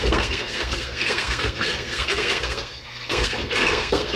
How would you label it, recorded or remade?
remade